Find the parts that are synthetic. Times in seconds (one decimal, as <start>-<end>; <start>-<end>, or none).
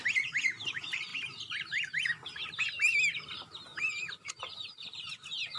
0.0-1.1; 3.1-5.6